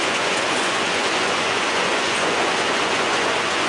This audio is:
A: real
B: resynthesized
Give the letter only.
B